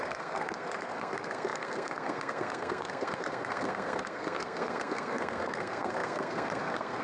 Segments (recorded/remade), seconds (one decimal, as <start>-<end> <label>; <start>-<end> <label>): 0.0-7.0 remade